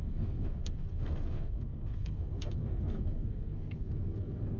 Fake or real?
fake